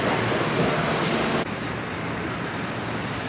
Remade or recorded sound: recorded